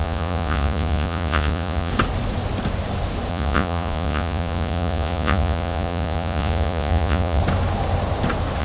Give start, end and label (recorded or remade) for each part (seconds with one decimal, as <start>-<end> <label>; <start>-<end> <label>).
0.0-1.9 remade; 1.9-3.3 recorded; 3.3-7.4 remade; 7.4-8.6 recorded

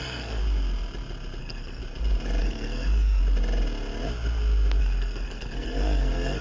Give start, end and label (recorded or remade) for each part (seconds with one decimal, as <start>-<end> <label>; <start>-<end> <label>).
0.0-0.4 remade; 0.4-1.4 recorded; 1.4-1.8 remade; 1.8-2.4 recorded; 2.4-3.2 remade; 3.2-4.8 recorded; 4.8-6.4 remade

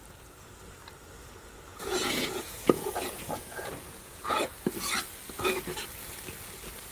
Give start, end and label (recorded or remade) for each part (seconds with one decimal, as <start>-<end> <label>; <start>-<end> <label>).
0.0-1.7 recorded; 1.7-4.4 remade; 4.4-6.9 recorded

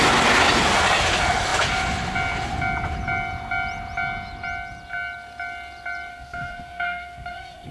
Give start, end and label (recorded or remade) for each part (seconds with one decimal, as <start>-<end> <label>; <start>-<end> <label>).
0.0-6.1 recorded; 6.1-7.7 remade